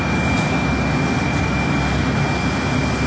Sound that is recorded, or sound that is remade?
recorded